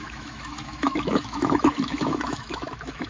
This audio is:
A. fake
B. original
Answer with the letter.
A